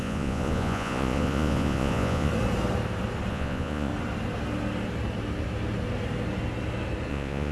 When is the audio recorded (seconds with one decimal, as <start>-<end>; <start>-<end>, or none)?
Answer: 2.3-3.3; 3.9-7.1